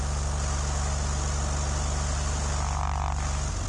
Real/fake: real